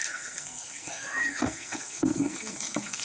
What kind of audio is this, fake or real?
fake